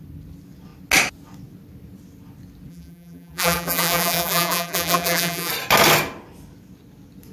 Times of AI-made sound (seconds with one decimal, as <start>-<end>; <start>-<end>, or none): 2.7-5.5